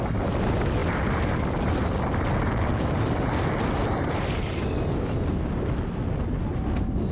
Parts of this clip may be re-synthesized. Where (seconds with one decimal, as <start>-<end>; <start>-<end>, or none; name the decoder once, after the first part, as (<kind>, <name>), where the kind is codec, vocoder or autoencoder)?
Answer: none